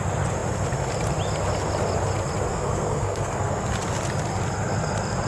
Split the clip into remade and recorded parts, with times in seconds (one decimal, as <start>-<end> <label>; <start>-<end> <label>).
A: 0.0-2.5 recorded; 2.5-3.6 remade; 3.6-5.3 recorded